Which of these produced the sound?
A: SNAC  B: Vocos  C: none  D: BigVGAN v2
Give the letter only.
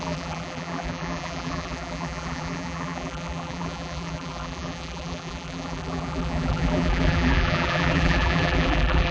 D